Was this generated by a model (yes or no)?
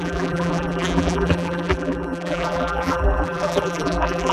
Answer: yes